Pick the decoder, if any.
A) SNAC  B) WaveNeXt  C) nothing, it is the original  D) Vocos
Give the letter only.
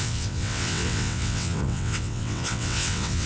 B